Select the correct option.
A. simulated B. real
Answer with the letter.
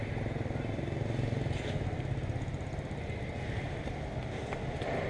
B